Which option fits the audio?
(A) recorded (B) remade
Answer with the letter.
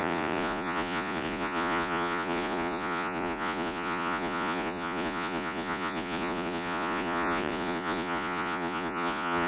B